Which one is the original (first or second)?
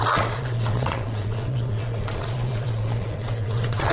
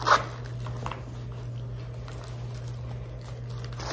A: second